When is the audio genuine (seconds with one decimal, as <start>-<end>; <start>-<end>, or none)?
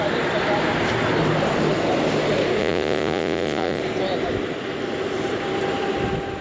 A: 0.0-2.6; 3.8-6.4